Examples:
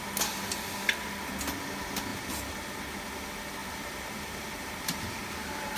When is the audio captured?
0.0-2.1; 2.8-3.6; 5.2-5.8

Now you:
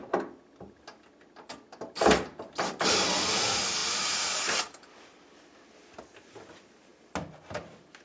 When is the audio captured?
0.0-8.0

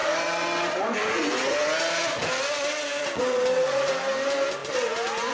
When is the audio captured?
0.0-5.3

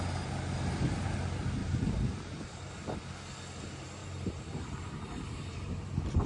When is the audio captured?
0.0-1.6; 2.5-4.0

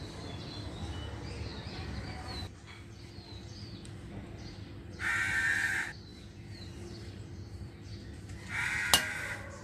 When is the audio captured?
0.0-6.1; 7.7-9.6

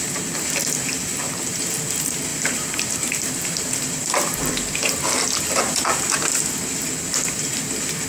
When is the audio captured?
0.0-2.3; 4.5-8.1

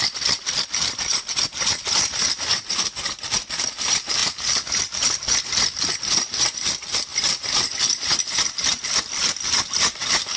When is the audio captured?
0.0-10.4

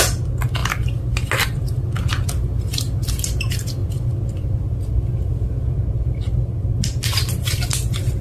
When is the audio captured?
0.0-8.2